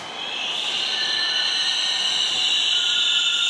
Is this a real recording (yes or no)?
yes